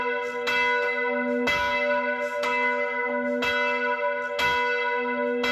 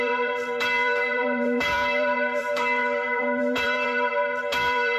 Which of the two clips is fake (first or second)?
second